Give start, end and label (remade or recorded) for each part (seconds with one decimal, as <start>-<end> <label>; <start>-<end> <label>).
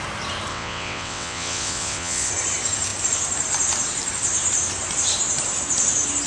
0.0-0.5 recorded; 0.5-2.3 remade; 2.3-6.3 recorded